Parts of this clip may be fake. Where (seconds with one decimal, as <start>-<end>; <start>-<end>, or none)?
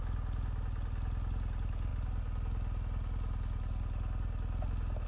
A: none